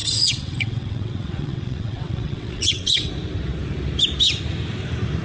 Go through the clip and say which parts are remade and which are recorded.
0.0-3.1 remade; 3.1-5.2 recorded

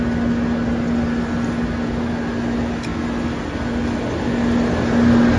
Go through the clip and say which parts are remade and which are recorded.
0.0-5.4 recorded

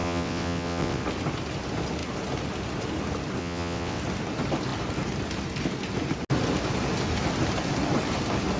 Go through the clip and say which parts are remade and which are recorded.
0.0-1.0 remade; 1.0-3.4 recorded; 3.4-4.0 remade; 4.0-8.6 recorded

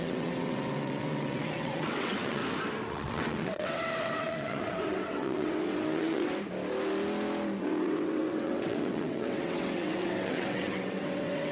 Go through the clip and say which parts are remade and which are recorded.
0.0-2.4 remade; 2.4-2.9 recorded; 2.9-6.3 remade; 6.3-7.6 recorded; 7.6-11.5 remade

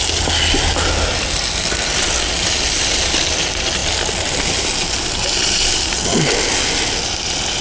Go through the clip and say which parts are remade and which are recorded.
0.0-7.6 recorded

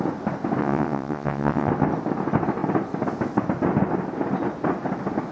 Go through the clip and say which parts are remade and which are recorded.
0.0-0.6 recorded; 0.6-1.7 remade; 1.7-5.3 recorded